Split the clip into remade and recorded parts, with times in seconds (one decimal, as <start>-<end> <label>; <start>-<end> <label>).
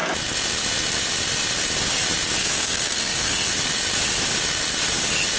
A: 0.0-2.4 recorded; 2.4-3.5 remade; 3.5-5.4 recorded